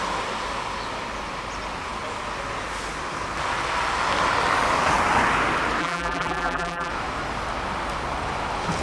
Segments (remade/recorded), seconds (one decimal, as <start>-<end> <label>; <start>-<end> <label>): 0.0-5.8 recorded; 5.8-6.9 remade; 6.9-8.8 recorded